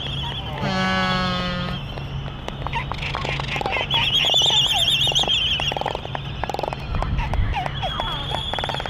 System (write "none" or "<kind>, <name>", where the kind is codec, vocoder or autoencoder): none